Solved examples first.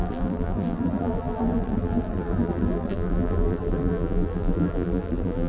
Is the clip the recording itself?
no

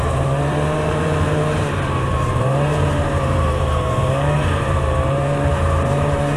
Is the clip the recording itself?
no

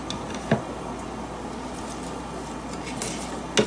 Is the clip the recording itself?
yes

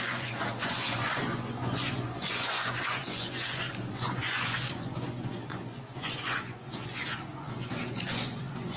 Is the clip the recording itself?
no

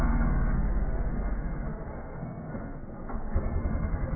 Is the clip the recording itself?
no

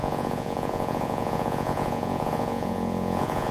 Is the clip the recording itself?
no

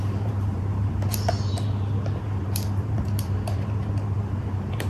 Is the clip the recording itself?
no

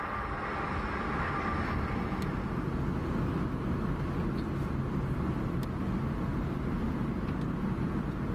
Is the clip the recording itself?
yes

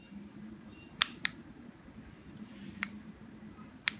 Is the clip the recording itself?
no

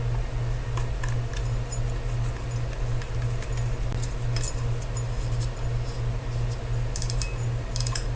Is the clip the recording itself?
yes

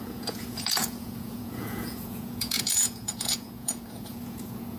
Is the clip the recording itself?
no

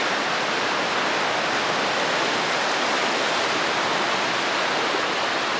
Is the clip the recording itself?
yes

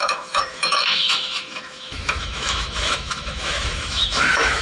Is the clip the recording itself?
no